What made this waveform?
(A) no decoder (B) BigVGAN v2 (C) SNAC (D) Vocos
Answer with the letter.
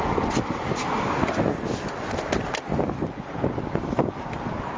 A